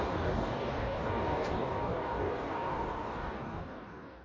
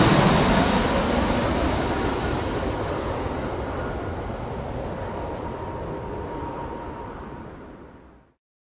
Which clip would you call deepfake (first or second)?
first